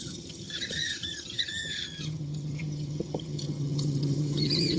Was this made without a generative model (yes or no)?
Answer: no